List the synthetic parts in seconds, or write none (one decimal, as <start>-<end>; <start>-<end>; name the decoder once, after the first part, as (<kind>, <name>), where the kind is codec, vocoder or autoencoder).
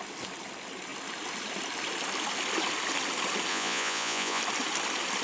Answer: 3.5-4.4 (vocoder, Vocos)